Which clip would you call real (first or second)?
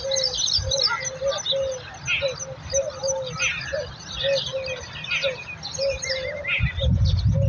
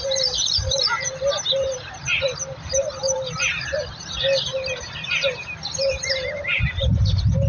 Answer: first